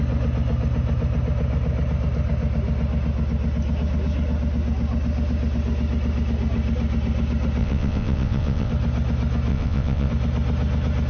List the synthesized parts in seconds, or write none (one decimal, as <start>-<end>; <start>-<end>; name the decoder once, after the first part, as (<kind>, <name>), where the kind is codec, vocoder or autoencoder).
7.6-8.7 (vocoder, WaveNeXt); 9.5-10.1